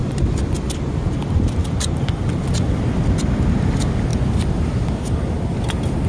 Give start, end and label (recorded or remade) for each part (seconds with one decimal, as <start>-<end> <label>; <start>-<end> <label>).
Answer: 0.0-6.1 recorded